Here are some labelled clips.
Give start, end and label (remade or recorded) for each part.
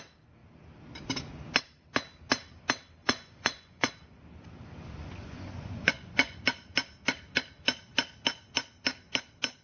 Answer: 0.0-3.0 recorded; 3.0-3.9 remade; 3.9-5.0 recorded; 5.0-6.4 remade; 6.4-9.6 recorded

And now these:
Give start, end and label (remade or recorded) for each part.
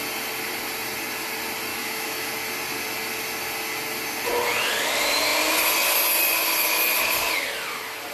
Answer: 0.0-1.7 recorded; 1.7-2.3 remade; 2.3-8.1 recorded